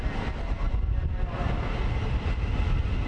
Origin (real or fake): real